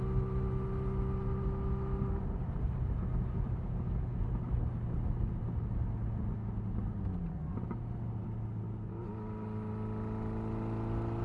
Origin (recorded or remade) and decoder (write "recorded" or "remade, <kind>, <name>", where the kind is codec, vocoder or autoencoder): recorded